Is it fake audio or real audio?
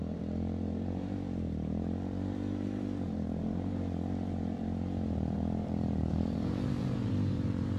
fake